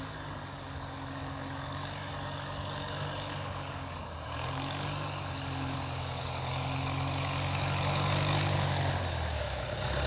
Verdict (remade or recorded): remade